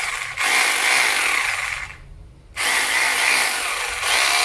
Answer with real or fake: real